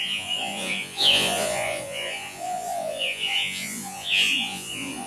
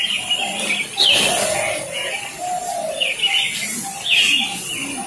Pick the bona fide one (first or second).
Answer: second